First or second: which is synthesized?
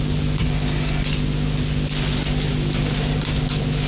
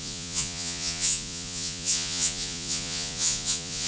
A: second